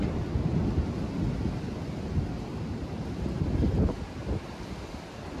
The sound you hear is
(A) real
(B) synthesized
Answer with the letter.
A